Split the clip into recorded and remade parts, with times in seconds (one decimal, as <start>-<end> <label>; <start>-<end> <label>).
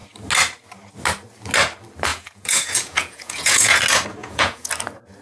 0.0-2.1 recorded; 2.1-3.8 remade; 3.8-4.2 recorded; 4.2-4.7 remade; 4.7-5.2 recorded